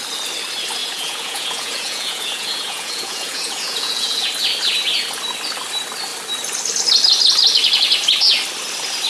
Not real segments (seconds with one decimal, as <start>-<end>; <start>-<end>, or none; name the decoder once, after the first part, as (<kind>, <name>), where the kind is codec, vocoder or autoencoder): 0.8-4.3 (vocoder, Vocos)